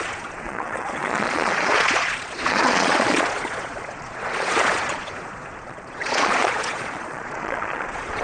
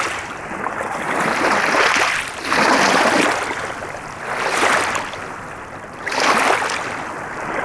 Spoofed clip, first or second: first